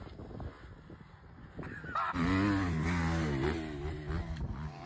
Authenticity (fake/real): real